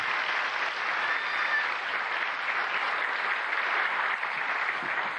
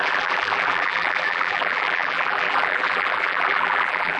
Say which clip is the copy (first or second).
second